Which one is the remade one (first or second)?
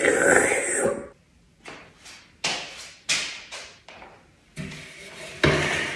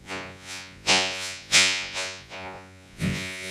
second